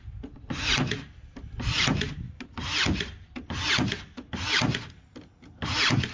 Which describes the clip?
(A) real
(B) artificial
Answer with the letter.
A